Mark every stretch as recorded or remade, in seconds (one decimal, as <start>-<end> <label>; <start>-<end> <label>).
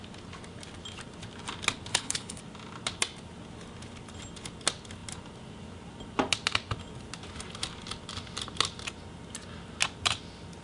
0.0-1.9 recorded; 1.9-2.4 remade; 2.4-10.6 recorded